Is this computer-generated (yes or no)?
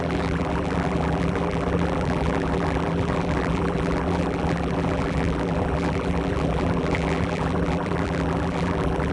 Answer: yes